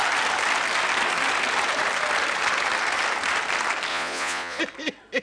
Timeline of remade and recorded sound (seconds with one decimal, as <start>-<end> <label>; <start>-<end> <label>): 0.0-3.9 recorded; 3.9-4.6 remade; 4.6-5.2 recorded